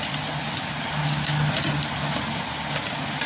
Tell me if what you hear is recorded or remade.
recorded